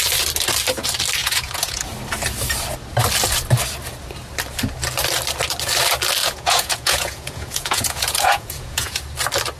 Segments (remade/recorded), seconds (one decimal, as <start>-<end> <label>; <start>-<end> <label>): 0.0-1.2 recorded; 1.2-1.9 remade; 1.9-6.2 recorded; 6.2-9.0 remade; 9.0-9.6 recorded